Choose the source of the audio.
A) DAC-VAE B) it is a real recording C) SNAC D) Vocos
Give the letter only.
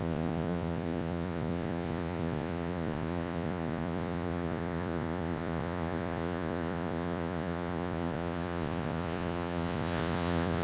D